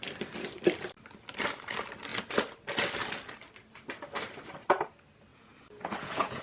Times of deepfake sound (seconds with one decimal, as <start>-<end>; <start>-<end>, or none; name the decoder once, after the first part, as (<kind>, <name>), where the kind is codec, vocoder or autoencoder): 5.3-6.4 (vocoder, Vocos)